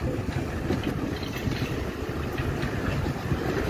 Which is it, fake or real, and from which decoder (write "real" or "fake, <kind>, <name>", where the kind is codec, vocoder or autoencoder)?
real